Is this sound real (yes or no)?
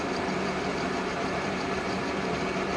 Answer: no